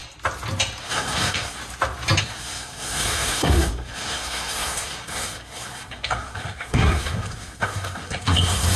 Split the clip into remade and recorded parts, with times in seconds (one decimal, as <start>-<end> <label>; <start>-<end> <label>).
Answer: 0.0-0.8 recorded; 0.8-1.6 remade; 1.6-2.2 recorded; 2.2-8.8 remade